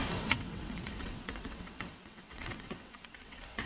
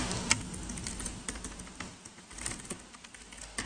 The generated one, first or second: first